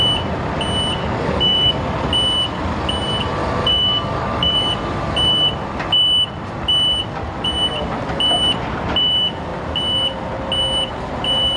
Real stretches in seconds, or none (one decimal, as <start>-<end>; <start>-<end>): 0.0-1.0; 1.7-3.4; 4.7-11.6